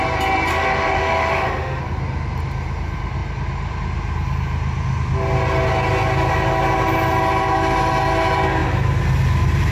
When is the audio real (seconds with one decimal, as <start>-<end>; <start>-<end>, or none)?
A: 0.0-0.5; 1.8-9.7